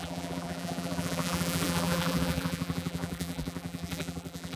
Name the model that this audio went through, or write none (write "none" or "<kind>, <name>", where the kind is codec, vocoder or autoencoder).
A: vocoder, BigVGAN v2